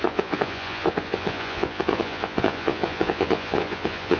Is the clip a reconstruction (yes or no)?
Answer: yes